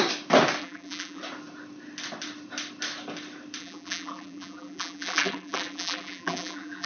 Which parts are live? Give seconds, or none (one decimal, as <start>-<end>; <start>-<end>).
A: 0.0-0.6; 1.2-3.6